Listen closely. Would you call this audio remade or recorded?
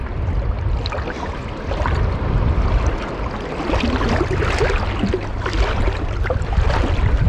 recorded